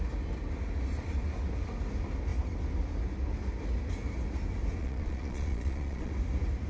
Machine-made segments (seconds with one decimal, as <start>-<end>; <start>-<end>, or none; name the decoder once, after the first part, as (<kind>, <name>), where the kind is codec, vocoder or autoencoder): 4.8-6.1 (vocoder, Vocos)